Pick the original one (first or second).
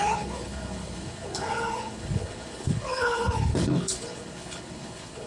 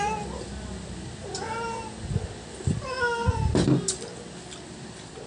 second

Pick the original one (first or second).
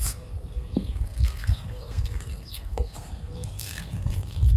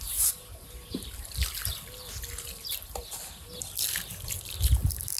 second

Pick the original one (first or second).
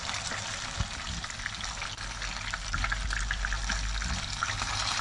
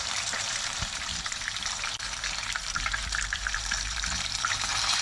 first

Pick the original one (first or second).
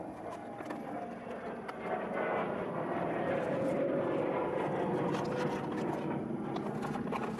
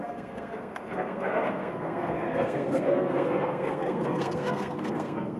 first